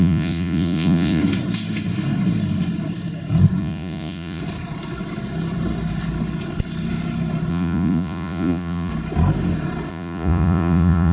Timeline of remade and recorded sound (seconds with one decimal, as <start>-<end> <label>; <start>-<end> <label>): 0.0-1.2 remade; 1.2-3.6 recorded; 3.6-4.4 remade; 4.4-7.5 recorded; 7.5-8.9 remade; 8.9-9.9 recorded; 9.9-11.1 remade